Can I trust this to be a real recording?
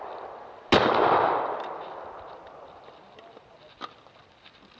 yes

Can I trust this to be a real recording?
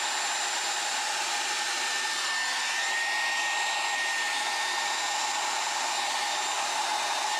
yes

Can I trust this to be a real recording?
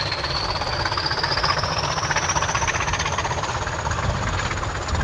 yes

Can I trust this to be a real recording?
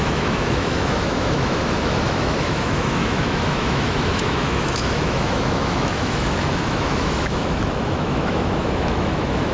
no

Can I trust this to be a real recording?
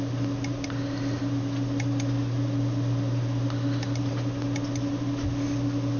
yes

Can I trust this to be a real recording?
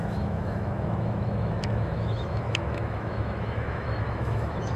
no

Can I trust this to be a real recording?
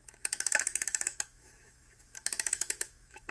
no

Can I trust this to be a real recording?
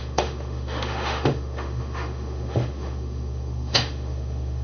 no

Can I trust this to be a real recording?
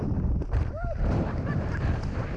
yes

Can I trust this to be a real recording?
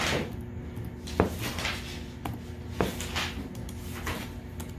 yes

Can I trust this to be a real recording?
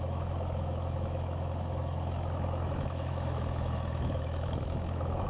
no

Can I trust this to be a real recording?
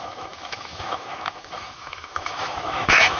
no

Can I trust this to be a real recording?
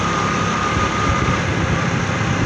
yes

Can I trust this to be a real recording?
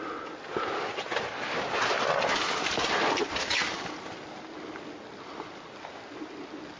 yes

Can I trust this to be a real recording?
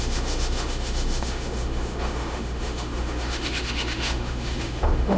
no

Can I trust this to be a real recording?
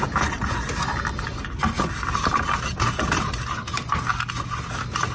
yes